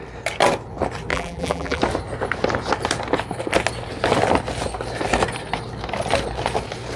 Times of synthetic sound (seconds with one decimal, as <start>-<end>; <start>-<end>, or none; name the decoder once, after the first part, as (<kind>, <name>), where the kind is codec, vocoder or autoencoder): 1.1-1.8 (vocoder, BigVGAN v2)